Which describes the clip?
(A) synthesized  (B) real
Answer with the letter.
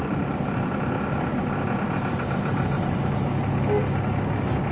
B